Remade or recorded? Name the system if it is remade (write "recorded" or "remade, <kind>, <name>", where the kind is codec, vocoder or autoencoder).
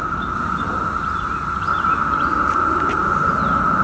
recorded